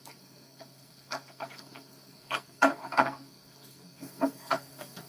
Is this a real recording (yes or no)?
no